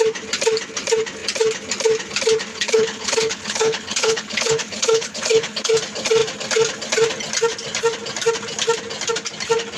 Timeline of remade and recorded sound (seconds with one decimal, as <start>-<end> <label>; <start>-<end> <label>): 0.0-2.5 recorded; 2.5-5.6 remade; 5.6-9.8 recorded